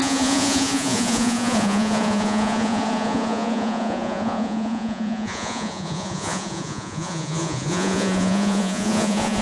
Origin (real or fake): fake